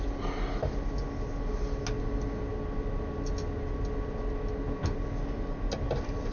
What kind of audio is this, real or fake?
real